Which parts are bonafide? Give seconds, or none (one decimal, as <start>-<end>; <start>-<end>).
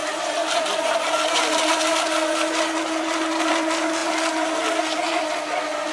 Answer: 0.0-5.9